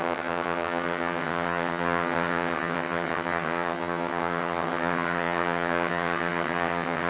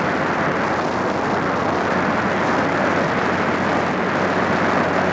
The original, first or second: second